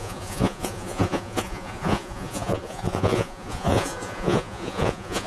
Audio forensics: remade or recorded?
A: remade